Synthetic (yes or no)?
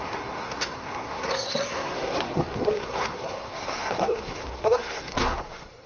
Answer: yes